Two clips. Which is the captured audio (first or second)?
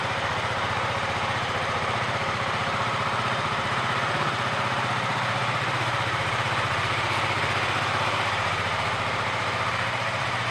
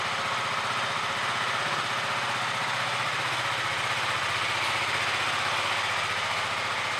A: second